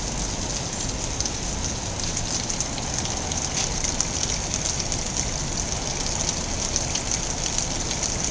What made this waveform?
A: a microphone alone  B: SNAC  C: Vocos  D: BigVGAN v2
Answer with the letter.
A